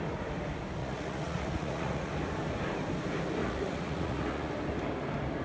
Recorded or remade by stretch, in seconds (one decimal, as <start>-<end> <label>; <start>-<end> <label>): 0.0-0.8 recorded; 0.8-2.1 remade; 2.1-3.4 recorded; 3.4-4.5 remade; 4.5-5.4 recorded